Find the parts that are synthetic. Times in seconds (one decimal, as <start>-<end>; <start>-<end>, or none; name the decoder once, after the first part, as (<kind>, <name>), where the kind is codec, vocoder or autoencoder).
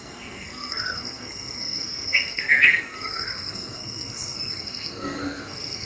0.0-5.9 (codec, SNAC)